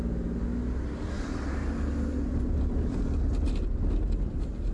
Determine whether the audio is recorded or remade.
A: recorded